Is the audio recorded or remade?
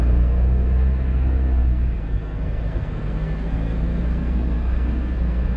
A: remade